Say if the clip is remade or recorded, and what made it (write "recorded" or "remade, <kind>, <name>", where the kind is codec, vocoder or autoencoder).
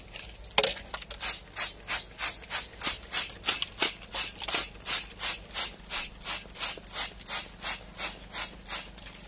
recorded